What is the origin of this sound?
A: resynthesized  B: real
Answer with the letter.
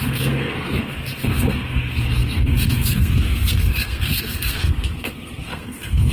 A